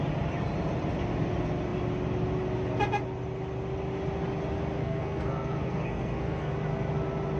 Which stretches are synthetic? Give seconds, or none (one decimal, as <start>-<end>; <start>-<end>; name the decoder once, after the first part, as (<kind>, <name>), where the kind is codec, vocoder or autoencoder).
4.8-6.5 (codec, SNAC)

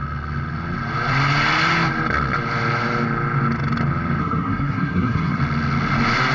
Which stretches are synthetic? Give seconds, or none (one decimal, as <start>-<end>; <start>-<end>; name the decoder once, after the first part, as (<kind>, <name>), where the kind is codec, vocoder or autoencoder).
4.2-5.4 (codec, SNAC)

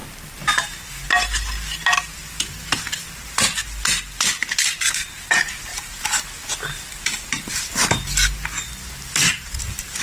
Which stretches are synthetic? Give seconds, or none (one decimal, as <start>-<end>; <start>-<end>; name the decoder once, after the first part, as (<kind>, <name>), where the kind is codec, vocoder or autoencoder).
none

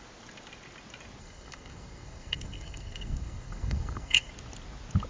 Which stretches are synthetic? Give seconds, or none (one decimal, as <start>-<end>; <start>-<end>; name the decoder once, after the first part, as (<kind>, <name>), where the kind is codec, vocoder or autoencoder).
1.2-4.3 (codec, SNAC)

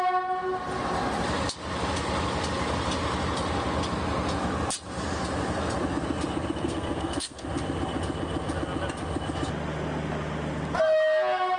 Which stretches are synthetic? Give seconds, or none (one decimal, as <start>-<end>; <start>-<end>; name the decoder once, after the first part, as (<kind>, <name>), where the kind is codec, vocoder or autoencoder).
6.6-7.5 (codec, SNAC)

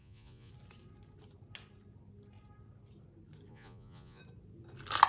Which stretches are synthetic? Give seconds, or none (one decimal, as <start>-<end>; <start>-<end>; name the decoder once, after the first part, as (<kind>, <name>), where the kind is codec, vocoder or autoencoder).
0.0-0.5 (vocoder, Vocos); 3.5-4.2

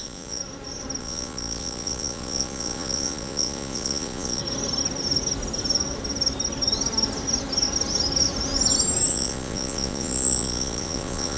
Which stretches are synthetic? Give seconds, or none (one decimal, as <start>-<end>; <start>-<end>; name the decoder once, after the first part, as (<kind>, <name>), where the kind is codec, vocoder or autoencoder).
0.0-0.4 (vocoder, Vocos); 1.0-4.4; 9.1-11.4

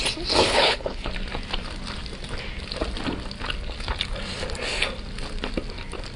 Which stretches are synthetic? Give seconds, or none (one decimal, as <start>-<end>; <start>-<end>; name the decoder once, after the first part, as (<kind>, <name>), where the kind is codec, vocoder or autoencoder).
0.4-1.1 (codec, HILCodec)